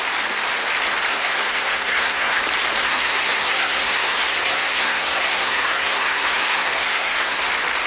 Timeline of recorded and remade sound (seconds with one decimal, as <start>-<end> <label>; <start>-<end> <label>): 0.0-1.1 recorded; 1.1-2.4 remade; 2.4-2.8 recorded; 2.8-7.5 remade; 7.5-7.9 recorded